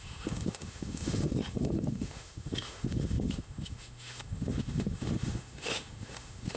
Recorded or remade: remade